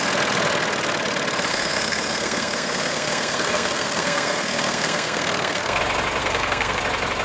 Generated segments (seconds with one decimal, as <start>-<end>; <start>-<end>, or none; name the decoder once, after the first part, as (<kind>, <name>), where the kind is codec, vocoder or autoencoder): 1.5-5.8 (codec, SNAC); 6.2-6.8